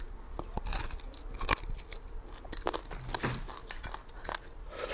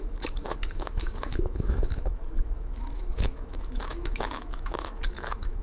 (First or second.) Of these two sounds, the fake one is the second